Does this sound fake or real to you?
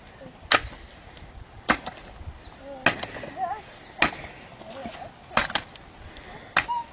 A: real